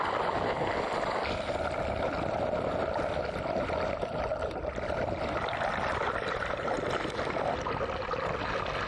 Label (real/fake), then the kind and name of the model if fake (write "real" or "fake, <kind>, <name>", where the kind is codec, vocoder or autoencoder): real